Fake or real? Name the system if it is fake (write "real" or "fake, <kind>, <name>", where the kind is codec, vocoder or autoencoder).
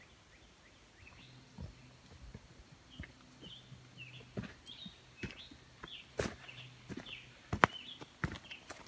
real